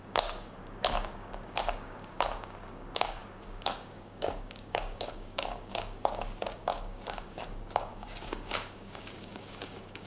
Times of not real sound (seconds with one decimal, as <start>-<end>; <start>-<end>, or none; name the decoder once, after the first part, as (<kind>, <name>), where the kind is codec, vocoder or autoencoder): 0.0-10.1 (codec, DAC)